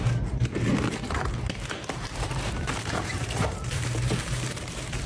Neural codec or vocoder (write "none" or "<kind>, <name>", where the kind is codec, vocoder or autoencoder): vocoder, BigVGAN v2